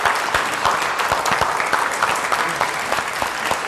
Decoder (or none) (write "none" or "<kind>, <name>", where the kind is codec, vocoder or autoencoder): none